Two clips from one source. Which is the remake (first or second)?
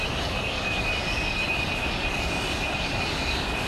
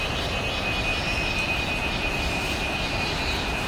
first